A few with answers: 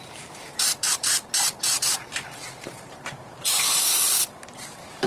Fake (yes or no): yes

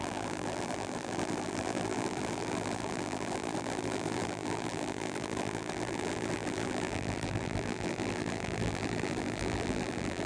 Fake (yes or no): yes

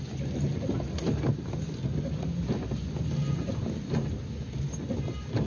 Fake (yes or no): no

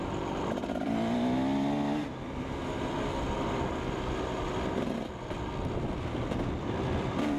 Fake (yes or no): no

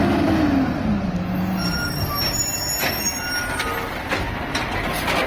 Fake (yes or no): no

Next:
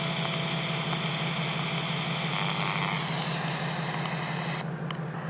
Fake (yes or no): no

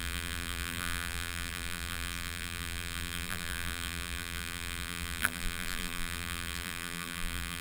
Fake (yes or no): yes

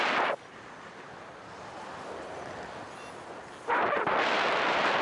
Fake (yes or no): no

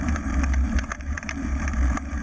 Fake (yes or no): yes